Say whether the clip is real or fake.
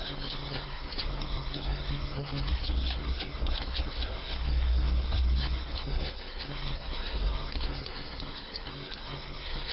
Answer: fake